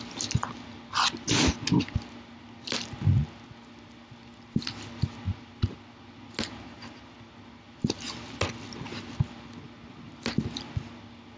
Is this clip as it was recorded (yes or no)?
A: yes